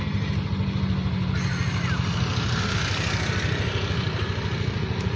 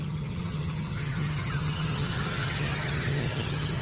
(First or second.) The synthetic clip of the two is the second